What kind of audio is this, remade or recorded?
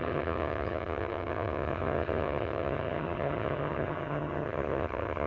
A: remade